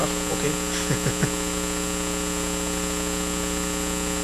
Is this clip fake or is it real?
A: real